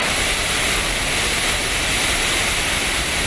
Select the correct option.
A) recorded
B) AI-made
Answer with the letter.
A